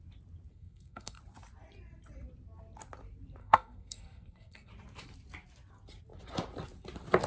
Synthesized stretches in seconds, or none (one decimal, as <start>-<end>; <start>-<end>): 0.5-1.2; 3.4-4.7